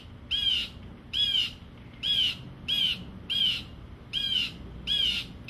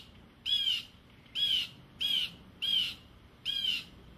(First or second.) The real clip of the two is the first